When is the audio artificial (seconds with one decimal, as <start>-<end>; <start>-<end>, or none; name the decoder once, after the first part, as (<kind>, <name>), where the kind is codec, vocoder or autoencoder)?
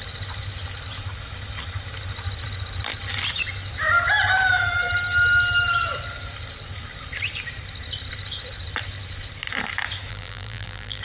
10.1-11.0 (vocoder, BigVGAN v2)